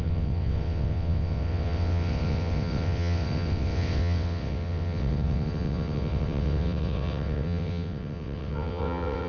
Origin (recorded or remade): remade